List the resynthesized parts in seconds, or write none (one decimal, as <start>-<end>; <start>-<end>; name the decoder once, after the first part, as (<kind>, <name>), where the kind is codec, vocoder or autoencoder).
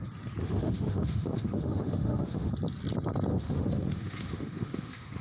0.4-2.5 (autoencoder, DAC-VAE); 3.3-5.2